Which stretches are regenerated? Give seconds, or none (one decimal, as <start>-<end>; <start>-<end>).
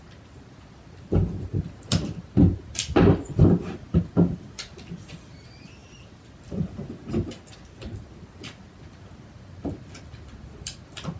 none